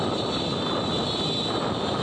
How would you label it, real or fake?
real